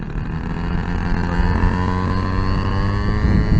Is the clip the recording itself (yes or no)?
yes